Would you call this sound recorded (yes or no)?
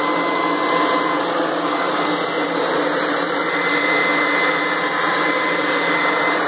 yes